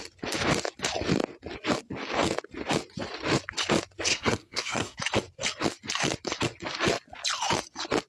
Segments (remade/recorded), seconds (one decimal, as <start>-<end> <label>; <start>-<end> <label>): 0.0-4.1 recorded; 4.1-5.0 remade; 5.0-8.1 recorded